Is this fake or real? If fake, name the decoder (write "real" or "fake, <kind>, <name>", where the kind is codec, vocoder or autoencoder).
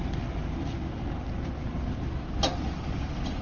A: real